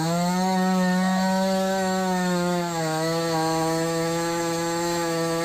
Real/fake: fake